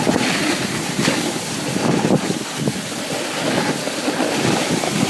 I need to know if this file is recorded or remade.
recorded